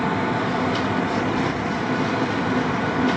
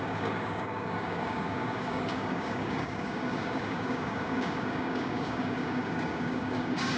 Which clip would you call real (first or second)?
first